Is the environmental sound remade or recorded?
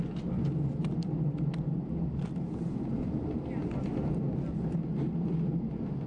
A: recorded